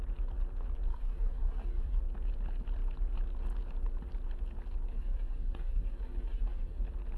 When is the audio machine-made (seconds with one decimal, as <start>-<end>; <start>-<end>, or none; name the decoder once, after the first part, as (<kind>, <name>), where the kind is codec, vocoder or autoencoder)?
0.9-2.0 (codec, DAC); 4.9-6.8